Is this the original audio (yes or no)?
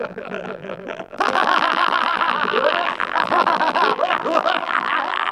no